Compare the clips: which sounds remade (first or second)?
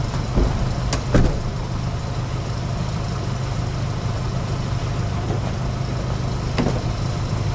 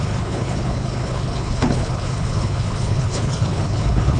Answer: second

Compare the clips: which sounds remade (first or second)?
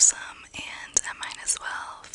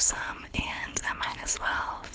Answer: second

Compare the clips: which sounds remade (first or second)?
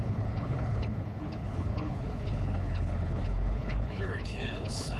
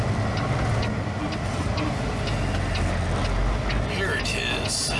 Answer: first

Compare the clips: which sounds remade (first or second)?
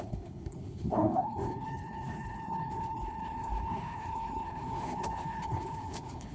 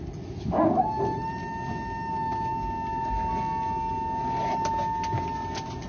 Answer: first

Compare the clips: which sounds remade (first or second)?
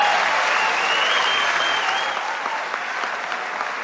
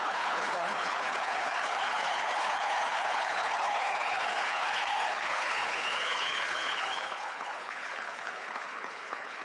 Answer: second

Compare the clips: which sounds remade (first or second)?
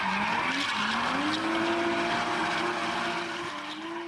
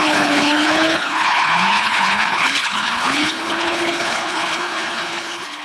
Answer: second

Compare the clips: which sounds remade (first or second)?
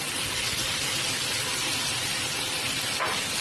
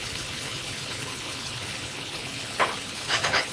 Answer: second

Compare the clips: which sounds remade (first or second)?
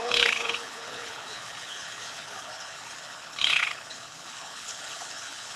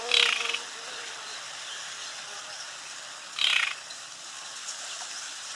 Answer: first